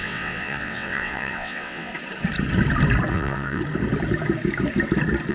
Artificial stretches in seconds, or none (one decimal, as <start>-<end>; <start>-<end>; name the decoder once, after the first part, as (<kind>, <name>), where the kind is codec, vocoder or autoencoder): 0.0-1.9 (vocoder, WaveNeXt); 3.1-3.6